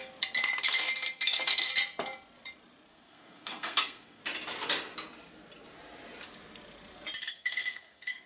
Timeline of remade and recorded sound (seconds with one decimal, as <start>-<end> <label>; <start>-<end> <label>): 0.0-0.6 recorded; 0.6-1.7 remade; 1.7-2.9 recorded; 2.9-4.2 remade; 4.2-7.2 recorded; 7.2-8.3 remade